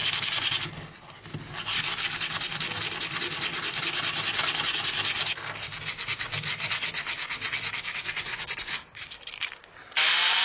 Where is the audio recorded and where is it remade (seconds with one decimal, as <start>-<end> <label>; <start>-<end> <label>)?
0.0-8.3 recorded; 8.3-8.8 remade; 8.8-10.4 recorded